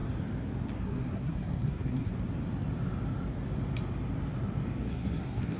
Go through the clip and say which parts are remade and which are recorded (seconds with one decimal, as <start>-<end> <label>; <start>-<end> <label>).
0.0-0.8 recorded; 0.8-2.1 remade; 2.1-4.9 recorded; 4.9-5.6 remade